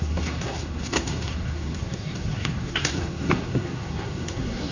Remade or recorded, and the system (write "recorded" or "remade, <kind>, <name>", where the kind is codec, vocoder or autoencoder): remade, codec, SNAC